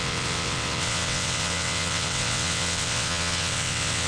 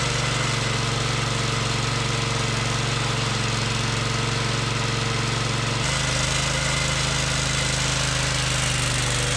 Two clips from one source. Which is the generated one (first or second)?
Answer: first